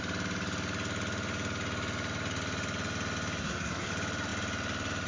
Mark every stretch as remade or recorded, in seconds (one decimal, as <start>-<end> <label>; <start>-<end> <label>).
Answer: 0.0-3.4 recorded; 3.4-3.9 remade; 3.9-5.1 recorded